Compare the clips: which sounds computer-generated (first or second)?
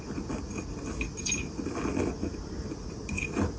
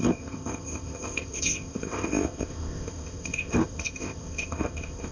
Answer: second